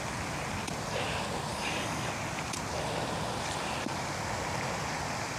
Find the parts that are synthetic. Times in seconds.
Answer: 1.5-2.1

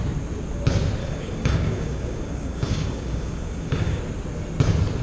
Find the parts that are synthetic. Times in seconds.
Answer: 1.0-4.0

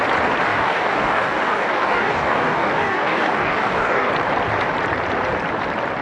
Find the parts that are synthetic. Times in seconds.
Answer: 0.5-4.1

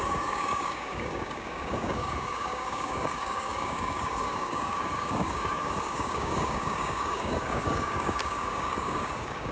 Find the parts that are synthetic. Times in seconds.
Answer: 0.0-9.5